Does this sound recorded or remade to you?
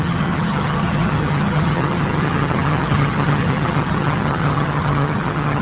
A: remade